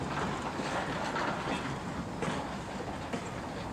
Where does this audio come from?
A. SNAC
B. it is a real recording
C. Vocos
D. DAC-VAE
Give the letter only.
B